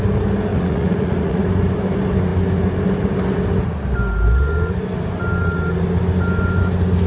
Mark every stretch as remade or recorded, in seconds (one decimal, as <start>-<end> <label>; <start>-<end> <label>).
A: 0.0-0.5 recorded; 0.5-1.4 remade; 1.4-7.1 recorded